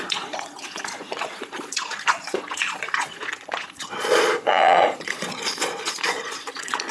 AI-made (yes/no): yes